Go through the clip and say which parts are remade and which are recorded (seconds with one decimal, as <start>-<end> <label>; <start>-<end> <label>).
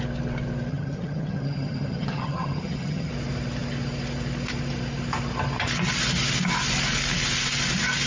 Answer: 0.0-0.7 recorded; 0.7-3.1 remade; 3.1-8.1 recorded